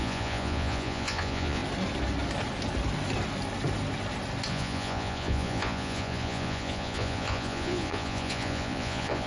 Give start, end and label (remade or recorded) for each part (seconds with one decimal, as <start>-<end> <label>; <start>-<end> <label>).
0.0-1.6 remade; 1.6-4.5 recorded; 4.5-9.3 remade